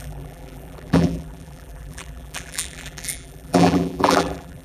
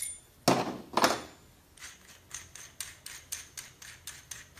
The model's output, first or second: first